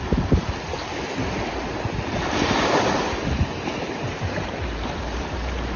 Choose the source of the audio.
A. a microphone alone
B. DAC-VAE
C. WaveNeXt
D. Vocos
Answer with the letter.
A